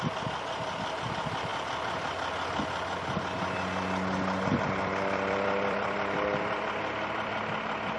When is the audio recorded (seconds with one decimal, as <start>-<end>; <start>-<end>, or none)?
1.5-4.6